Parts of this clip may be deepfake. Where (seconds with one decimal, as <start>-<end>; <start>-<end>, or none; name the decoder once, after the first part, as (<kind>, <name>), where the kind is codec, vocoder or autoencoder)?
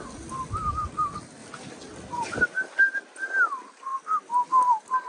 none